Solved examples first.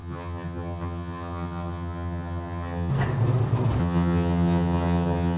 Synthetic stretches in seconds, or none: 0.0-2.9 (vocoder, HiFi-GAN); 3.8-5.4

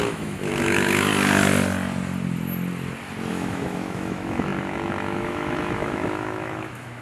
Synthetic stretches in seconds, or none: 0.0-1.1 (autoencoder, DAC-VAE); 3.3-7.0

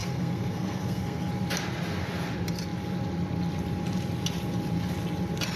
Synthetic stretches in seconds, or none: 0.0-1.3 (codec, SNAC)

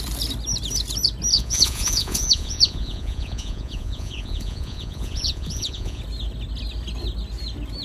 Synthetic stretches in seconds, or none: 1.3-6.0 (vocoder, Vocos)